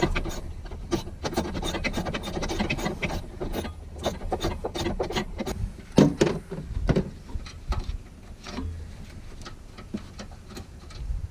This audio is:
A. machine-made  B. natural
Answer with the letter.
B